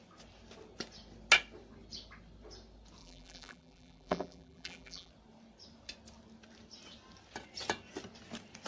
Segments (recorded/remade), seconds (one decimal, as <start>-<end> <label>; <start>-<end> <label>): 0.0-3.0 recorded; 3.0-5.1 remade; 5.1-8.7 recorded